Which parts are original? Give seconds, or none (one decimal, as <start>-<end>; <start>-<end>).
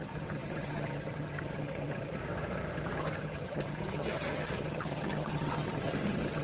2.2-3.0